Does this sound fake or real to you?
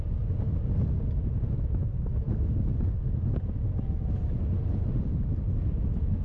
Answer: real